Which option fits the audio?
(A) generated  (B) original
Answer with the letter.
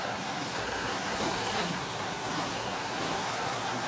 A